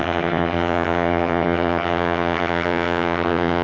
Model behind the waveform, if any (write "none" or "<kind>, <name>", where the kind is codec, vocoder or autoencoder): vocoder, HiFi-GAN